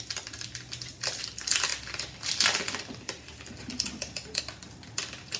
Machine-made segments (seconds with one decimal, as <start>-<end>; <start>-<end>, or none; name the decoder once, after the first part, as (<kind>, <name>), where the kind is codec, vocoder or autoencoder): none